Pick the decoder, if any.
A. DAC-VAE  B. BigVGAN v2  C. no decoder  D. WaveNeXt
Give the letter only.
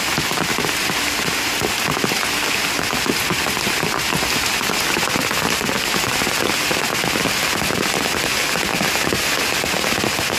C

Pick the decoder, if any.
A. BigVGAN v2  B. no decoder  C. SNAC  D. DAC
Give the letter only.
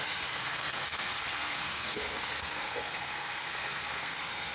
C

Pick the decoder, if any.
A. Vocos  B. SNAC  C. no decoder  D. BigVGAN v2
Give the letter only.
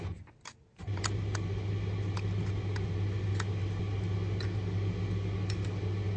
C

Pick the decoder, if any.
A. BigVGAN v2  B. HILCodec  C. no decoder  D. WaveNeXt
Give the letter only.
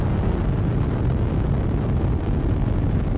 C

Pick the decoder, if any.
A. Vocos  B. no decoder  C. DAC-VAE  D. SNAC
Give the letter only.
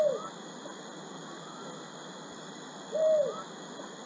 B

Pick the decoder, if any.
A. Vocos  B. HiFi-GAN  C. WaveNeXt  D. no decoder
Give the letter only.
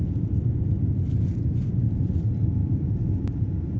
D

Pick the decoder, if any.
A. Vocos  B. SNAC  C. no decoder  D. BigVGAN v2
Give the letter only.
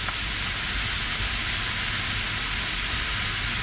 C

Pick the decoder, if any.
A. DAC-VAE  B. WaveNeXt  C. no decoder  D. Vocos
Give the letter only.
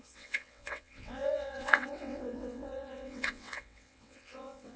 B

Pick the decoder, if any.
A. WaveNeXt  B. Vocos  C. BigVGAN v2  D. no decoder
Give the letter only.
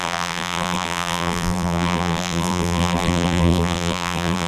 C